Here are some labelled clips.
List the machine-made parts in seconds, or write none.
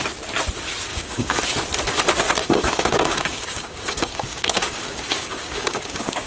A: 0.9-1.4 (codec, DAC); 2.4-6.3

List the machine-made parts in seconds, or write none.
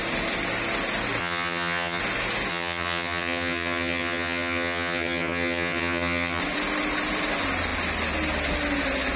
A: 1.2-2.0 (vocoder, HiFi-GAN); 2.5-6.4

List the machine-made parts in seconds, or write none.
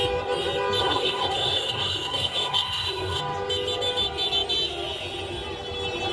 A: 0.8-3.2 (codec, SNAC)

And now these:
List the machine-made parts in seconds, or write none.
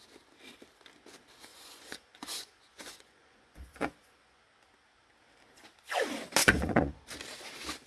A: 1.5-4.4 (vocoder, Vocos); 6.4-7.0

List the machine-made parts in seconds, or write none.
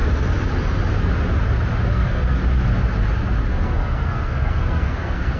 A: 1.9-2.4 (codec, SNAC); 3.5-5.4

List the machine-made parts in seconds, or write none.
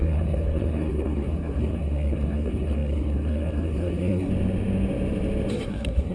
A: 0.0-4.3 (codec, SNAC); 5.5-6.1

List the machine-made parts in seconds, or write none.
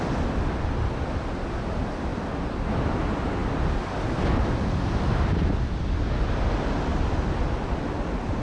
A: none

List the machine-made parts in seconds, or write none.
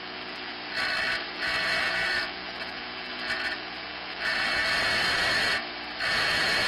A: 0.0-0.5 (vocoder, Vocos); 1.3-4.6; 6.1-6.7